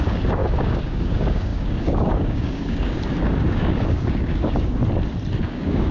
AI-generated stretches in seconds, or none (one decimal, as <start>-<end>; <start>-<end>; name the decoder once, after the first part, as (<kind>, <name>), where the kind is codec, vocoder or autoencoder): 0.0-4.8 (codec, DAC); 5.4-5.9